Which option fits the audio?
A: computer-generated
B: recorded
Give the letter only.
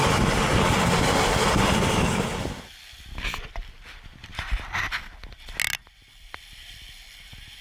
B